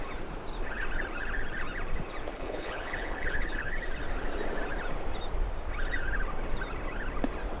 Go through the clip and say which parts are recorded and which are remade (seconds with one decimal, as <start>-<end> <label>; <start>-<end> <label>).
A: 0.0-2.3 recorded; 2.3-3.7 remade; 3.7-7.6 recorded